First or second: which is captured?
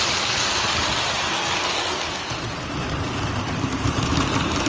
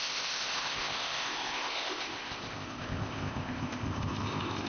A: first